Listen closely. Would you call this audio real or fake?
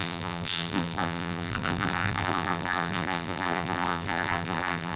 fake